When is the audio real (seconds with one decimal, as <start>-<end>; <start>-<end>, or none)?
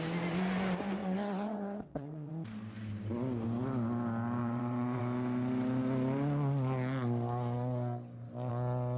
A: 0.0-1.0; 2.3-4.4; 5.0-9.0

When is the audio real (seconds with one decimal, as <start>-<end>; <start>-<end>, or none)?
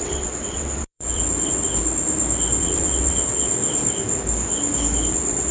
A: 1.6-2.6; 3.6-5.1